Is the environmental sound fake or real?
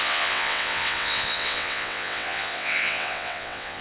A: fake